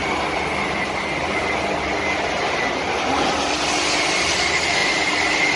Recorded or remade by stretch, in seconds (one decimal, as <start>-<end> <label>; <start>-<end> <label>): 0.0-4.8 recorded; 4.8-5.6 remade